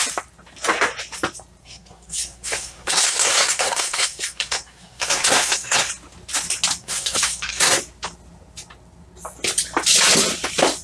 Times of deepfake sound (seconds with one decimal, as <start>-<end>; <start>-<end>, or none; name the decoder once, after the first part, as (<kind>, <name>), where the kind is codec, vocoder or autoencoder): 1.6-5.9 (codec, SNAC); 6.8-7.8